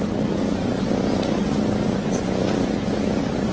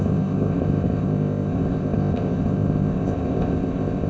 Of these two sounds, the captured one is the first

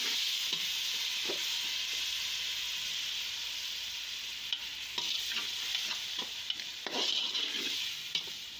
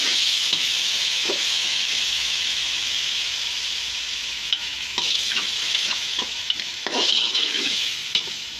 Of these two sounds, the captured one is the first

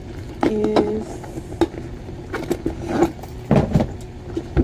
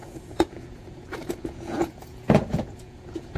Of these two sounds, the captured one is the first